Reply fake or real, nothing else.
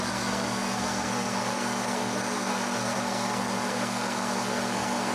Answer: fake